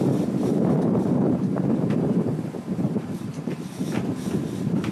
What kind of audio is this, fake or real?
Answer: fake